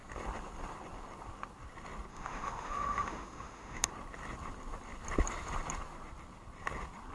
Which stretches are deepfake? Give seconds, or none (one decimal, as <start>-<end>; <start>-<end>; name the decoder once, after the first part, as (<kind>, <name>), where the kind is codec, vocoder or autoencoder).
2.1-3.9 (autoencoder, DAC-VAE)